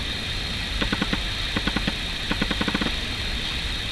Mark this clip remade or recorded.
recorded